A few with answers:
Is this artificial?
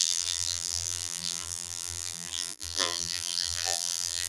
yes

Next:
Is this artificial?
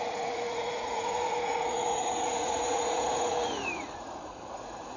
yes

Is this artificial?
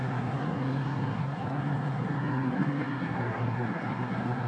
yes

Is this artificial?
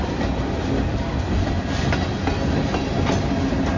no